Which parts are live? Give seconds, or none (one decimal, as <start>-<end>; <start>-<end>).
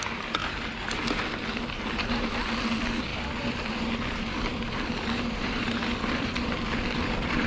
0.0-0.4; 0.9-3.1